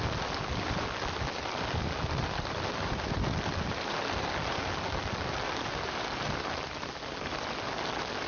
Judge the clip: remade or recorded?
recorded